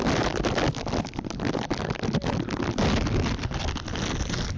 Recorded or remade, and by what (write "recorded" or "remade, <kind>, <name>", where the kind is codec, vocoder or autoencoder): recorded